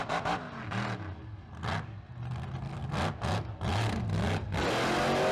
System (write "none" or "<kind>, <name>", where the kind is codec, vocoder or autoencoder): none